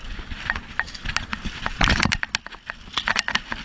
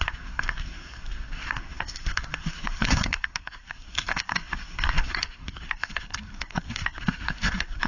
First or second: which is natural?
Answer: first